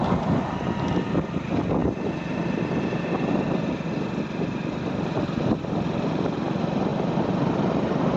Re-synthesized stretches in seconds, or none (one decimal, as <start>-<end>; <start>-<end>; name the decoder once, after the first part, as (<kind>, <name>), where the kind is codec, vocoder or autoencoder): 6.9-8.2 (vocoder, BigVGAN v2)